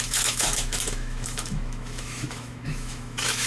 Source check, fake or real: fake